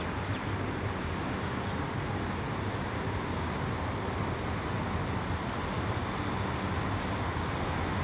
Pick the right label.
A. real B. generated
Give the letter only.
A